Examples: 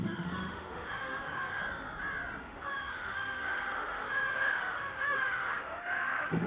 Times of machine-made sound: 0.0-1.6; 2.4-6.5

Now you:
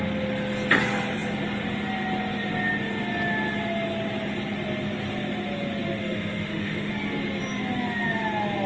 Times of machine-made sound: 6.0-6.9

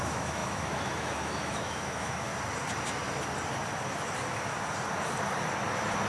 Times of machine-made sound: 0.0-2.3

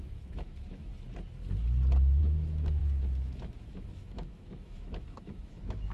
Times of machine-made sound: 0.0-0.9; 2.2-2.8; 3.3-5.9